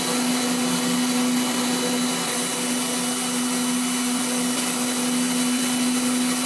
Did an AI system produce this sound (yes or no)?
no